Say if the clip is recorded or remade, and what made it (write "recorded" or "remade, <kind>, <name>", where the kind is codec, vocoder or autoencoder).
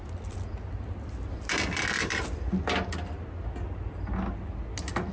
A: recorded